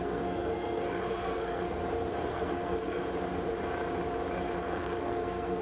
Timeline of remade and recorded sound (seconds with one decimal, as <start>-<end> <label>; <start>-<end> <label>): 0.0-1.8 remade; 1.8-2.3 recorded; 2.3-3.0 remade; 3.0-4.6 recorded; 4.6-5.6 remade